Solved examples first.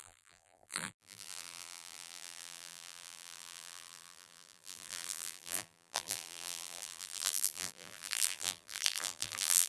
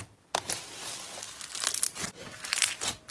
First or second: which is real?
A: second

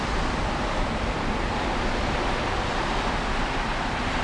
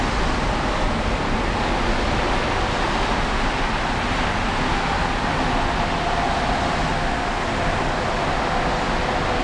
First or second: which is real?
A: second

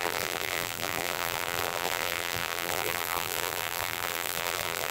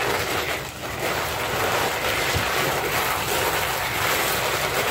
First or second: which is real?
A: second